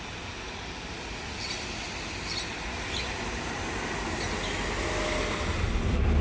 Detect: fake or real real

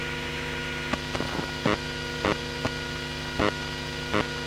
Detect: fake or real real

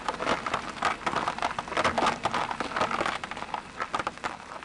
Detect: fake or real real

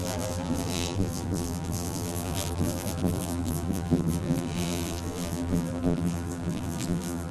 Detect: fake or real fake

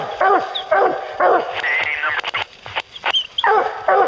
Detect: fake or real real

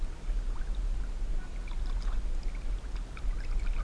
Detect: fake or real real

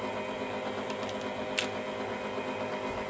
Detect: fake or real real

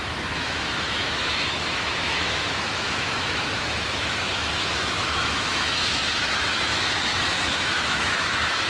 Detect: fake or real fake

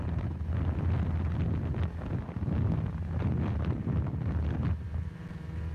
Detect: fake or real real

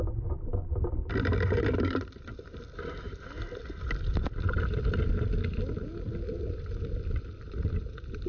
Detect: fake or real fake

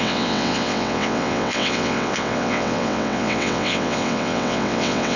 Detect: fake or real fake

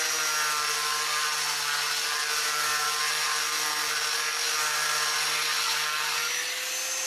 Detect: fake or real real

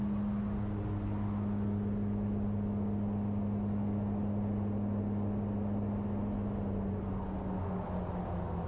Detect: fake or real real